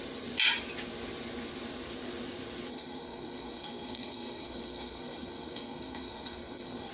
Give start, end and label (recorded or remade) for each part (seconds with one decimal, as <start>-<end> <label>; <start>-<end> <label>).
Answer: 0.0-2.7 recorded; 2.7-6.9 remade